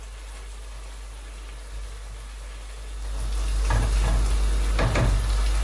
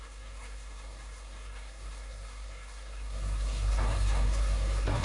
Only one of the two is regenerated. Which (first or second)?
second